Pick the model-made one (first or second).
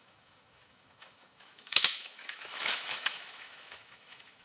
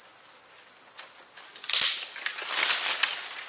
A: first